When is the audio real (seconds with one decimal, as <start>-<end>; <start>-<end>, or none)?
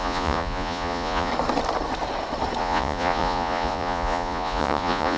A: 1.3-2.6